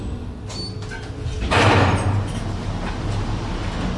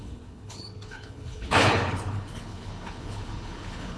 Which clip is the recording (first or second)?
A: first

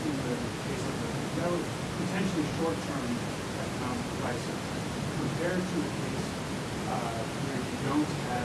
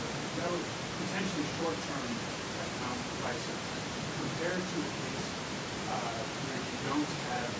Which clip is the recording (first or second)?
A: first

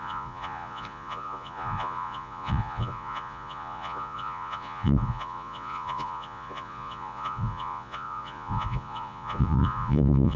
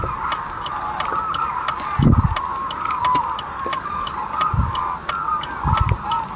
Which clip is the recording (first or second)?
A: second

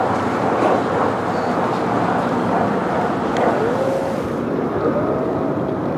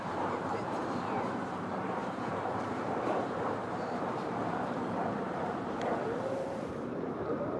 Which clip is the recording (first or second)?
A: first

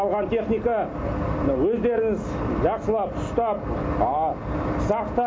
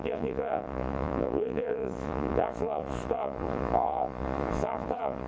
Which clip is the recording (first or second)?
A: first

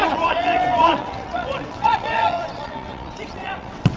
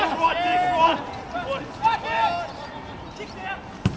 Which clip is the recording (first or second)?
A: second